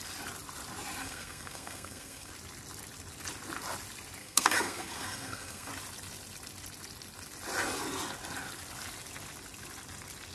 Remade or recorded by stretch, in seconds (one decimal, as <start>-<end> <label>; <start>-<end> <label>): 0.0-1.0 recorded; 1.0-2.3 remade; 2.3-4.2 recorded; 4.2-5.7 remade; 5.7-10.3 recorded